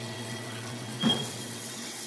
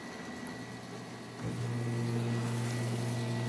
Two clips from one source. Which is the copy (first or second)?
first